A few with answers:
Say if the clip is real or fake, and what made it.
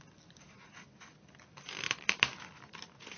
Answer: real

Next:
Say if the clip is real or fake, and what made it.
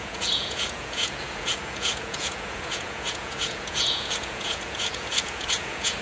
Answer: fake, vocoder, Vocos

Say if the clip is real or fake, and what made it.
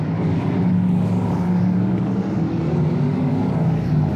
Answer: fake, codec, DAC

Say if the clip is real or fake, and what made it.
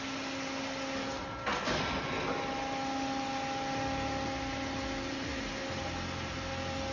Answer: real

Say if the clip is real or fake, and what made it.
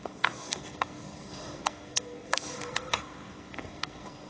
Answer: fake, codec, SNAC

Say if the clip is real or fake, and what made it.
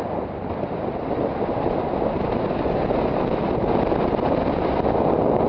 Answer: real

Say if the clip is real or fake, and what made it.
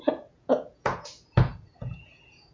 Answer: fake, vocoder, Vocos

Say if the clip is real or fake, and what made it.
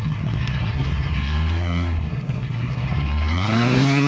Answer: fake, codec, SNAC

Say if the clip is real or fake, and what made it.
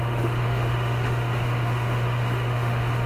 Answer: fake, autoencoder, DAC-VAE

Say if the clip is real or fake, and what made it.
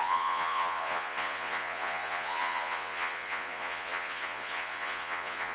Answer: fake, vocoder, Vocos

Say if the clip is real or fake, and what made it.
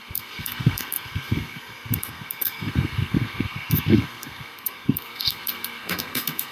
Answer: fake, codec, SNAC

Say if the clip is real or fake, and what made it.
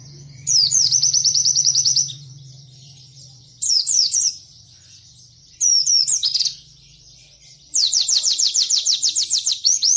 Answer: fake, vocoder, Vocos